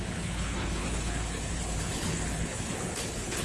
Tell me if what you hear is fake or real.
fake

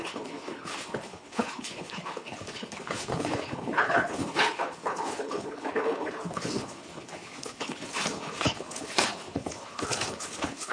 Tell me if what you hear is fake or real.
fake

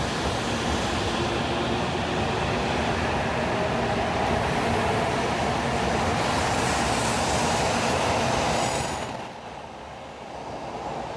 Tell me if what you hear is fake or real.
real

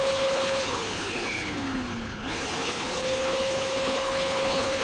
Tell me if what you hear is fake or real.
fake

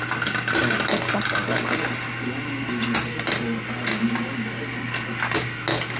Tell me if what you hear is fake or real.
real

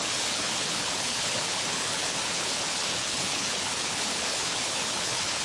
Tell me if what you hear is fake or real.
fake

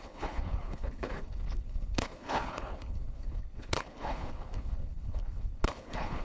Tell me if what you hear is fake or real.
fake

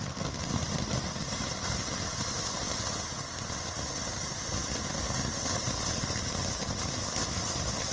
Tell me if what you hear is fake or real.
real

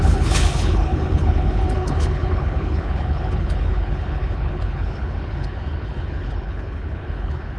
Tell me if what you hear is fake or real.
fake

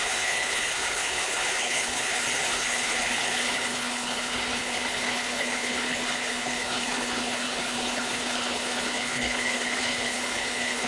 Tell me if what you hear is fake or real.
fake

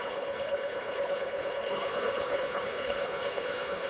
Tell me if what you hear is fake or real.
fake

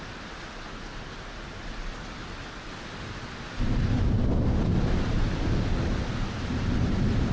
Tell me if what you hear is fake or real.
real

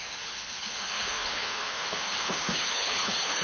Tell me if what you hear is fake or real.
fake